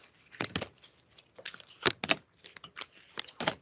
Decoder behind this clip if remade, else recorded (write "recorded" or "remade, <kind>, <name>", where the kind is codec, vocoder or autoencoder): recorded